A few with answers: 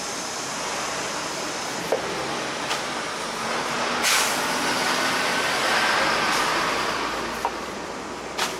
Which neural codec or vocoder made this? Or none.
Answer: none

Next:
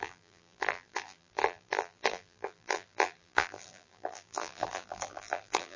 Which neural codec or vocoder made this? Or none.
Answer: vocoder, BigVGAN v2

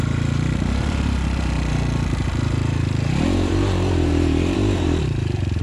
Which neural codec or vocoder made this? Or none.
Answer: vocoder, BigVGAN v2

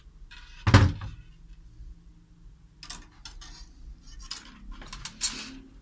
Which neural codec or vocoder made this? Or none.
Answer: none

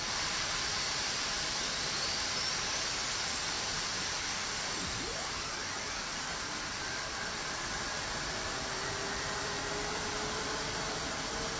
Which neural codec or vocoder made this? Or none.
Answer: vocoder, BigVGAN v2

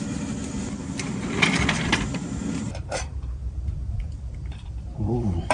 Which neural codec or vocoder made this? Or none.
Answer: vocoder, BigVGAN v2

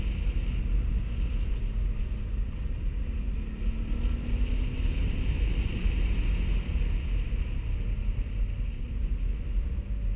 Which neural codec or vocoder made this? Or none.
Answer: none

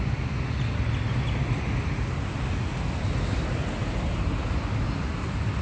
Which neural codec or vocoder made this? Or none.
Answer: none